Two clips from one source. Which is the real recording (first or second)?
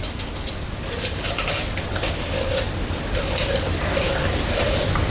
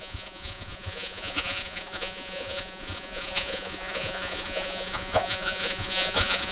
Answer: first